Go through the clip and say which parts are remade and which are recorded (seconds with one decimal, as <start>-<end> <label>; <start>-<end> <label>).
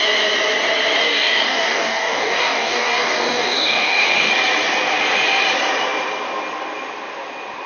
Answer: 0.0-1.0 recorded; 1.0-4.3 remade; 4.3-7.7 recorded